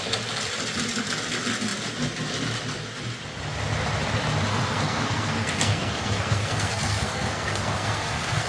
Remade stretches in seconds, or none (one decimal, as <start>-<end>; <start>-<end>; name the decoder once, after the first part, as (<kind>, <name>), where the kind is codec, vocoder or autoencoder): 4.5-8.5 (codec, SNAC)